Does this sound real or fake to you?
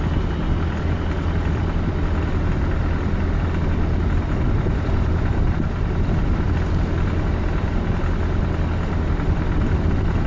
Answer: real